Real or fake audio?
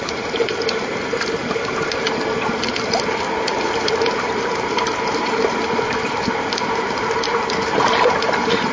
fake